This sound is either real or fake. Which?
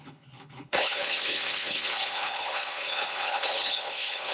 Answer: fake